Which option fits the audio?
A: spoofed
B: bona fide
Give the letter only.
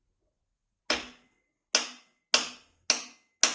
B